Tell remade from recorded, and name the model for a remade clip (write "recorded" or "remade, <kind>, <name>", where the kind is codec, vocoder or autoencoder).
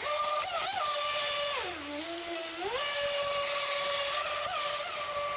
recorded